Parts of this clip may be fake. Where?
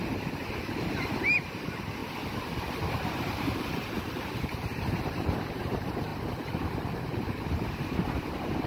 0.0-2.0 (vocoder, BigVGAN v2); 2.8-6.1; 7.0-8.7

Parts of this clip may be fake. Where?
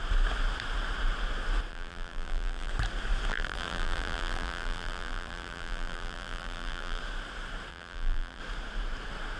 1.7-2.7 (vocoder, BigVGAN v2); 3.3-7.0; 7.7-8.4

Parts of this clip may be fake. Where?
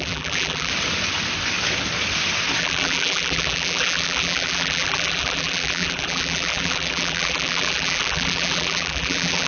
0.0-0.7 (vocoder, BigVGAN v2); 2.6-9.5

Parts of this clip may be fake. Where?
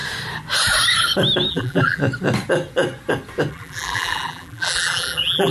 1.5-2.0 (vocoder, BigVGAN v2); 3.5-5.5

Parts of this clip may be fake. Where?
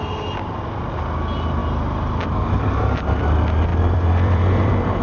1.6-2.7 (vocoder, BigVGAN v2); 3.7-5.0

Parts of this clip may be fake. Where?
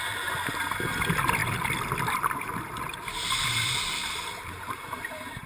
4.0-5.5 (vocoder, BigVGAN v2)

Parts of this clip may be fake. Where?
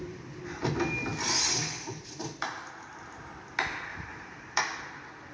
3.9-4.6 (vocoder, BigVGAN v2)